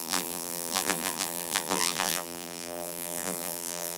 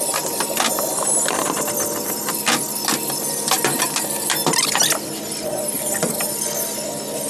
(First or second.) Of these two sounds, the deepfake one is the first